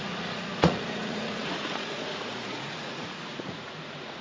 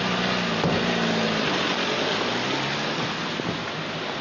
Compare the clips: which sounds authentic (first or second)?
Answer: second